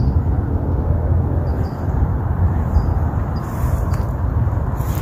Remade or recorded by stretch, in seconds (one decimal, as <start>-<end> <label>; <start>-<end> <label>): 0.0-1.5 recorded; 1.5-4.5 remade; 4.5-5.0 recorded